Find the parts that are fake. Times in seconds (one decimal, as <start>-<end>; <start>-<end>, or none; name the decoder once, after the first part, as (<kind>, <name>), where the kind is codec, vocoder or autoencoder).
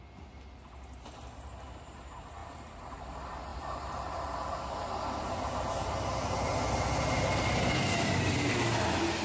2.4-3.0 (vocoder, BigVGAN v2); 3.5-4.7